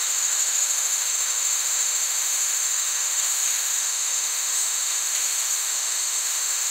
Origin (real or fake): fake